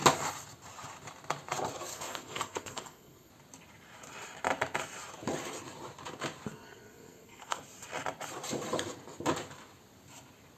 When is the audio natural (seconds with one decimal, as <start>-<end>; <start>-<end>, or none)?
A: 0.0-1.9; 3.3-6.5; 7.6-10.6